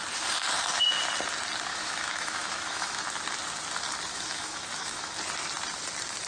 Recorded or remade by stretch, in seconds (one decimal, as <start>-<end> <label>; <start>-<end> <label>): 0.0-1.7 recorded; 1.7-3.0 remade; 3.0-4.1 recorded; 4.1-5.1 remade; 5.1-6.3 recorded

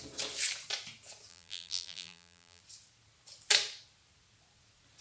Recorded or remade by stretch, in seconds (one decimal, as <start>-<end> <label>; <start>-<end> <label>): 0.0-1.3 recorded; 1.3-2.6 remade; 2.6-5.0 recorded

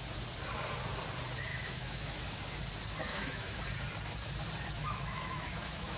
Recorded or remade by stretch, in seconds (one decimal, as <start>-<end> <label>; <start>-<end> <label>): 0.0-1.5 recorded; 1.5-2.2 remade; 2.2-3.1 recorded; 3.1-3.6 remade; 3.6-4.8 recorded; 4.8-6.0 remade

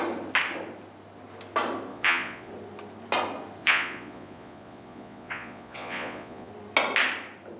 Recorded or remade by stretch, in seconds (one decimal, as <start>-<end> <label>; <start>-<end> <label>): 0.0-1.9 recorded; 1.9-2.5 remade; 2.5-3.6 recorded; 3.6-6.5 remade; 6.5-7.6 recorded

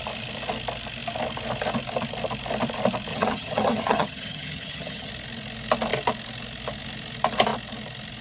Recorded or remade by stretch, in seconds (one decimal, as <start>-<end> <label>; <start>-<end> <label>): 0.0-3.1 recorded; 3.1-5.1 remade; 5.1-8.2 recorded

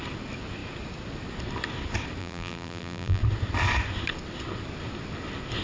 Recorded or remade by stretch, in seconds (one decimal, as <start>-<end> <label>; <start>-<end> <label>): 0.0-2.2 recorded; 2.2-3.2 remade; 3.2-5.6 recorded

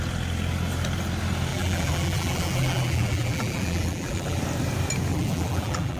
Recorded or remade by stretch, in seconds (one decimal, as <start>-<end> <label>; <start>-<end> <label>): 0.0-1.5 recorded; 1.5-4.4 remade; 4.4-5.1 recorded; 5.1-6.0 remade

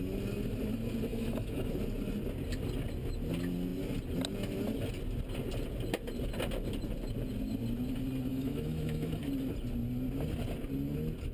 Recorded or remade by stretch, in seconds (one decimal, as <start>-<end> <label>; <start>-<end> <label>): 0.0-1.1 recorded; 1.1-1.7 remade; 1.7-8.3 recorded; 8.3-9.2 remade; 9.2-11.3 recorded